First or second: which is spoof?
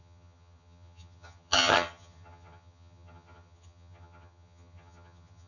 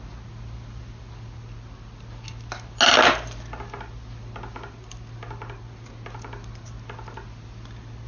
first